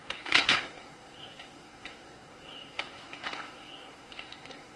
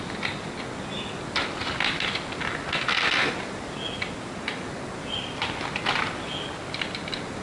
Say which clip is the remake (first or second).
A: first